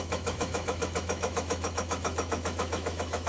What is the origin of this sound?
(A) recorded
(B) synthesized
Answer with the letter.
B